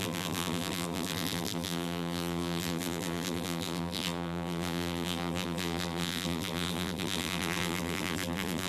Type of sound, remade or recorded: remade